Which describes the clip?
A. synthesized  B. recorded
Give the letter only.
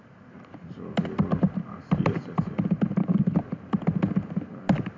B